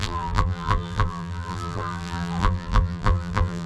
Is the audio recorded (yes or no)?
no